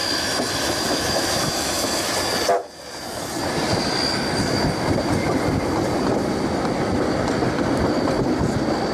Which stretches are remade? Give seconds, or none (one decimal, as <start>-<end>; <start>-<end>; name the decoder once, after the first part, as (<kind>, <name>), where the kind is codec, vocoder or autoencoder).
none